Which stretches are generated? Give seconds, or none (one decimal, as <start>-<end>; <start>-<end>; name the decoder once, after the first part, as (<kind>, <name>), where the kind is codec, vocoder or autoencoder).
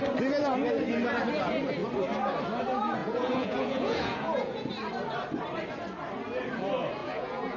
3.0-4.7 (vocoder, Vocos); 7.0-7.6